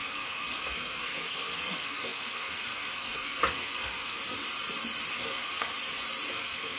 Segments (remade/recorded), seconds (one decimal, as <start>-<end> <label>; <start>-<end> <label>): 0.0-4.2 remade; 4.2-5.2 recorded; 5.2-5.7 remade; 5.7-6.3 recorded; 6.3-6.8 remade